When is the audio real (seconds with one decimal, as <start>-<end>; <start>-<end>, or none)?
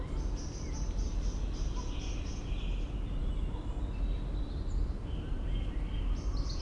0.0-6.6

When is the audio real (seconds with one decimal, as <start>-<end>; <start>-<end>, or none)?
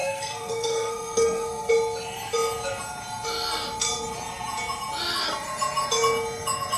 1.7-6.8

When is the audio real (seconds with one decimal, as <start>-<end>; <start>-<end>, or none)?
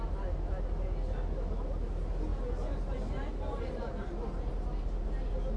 0.0-5.6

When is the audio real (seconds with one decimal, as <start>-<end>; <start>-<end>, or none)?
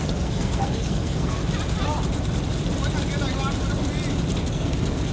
1.4-4.5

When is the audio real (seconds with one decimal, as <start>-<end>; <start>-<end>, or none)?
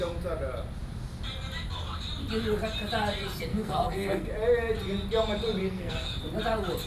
0.0-3.5; 4.3-5.6; 6.2-6.9